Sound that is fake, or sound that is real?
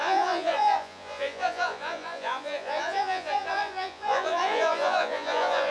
fake